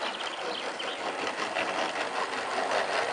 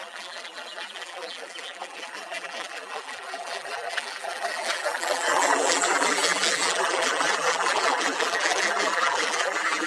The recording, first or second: first